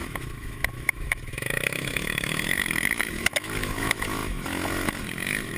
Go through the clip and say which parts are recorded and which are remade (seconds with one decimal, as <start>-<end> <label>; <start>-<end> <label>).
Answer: 0.0-5.6 remade

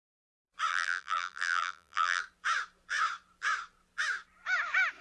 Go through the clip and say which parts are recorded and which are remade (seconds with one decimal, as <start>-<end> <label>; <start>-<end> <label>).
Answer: 0.0-0.7 recorded; 0.7-2.2 remade; 2.2-5.0 recorded

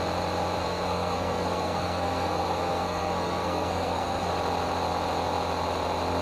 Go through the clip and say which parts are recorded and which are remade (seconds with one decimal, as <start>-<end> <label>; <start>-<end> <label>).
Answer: 0.0-0.6 recorded; 0.6-4.3 remade; 4.3-6.2 recorded